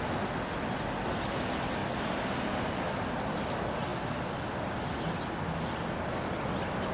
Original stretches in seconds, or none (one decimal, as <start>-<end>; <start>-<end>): 0.0-6.9